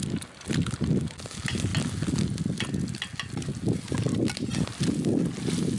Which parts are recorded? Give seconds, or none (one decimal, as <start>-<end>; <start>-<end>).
0.0-5.8